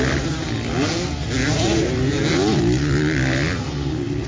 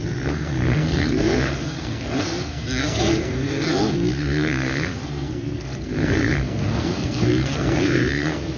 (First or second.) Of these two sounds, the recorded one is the first